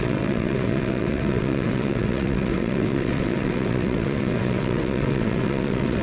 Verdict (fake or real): fake